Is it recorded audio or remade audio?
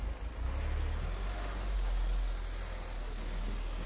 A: recorded